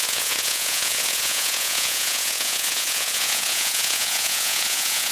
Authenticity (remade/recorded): remade